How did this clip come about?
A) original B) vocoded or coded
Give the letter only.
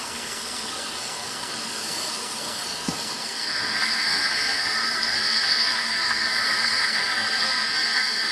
B